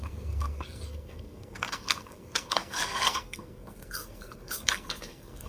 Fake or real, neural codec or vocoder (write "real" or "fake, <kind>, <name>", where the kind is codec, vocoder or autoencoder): fake, codec, SNAC